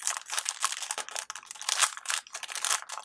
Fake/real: real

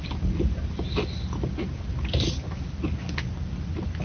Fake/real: real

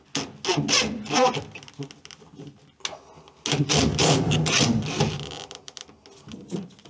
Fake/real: real